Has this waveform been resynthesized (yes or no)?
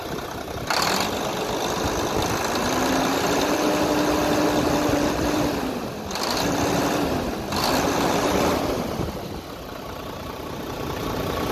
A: yes